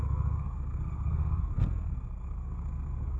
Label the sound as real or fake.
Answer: fake